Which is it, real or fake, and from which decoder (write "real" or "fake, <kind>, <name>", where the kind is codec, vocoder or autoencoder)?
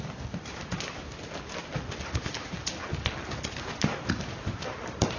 real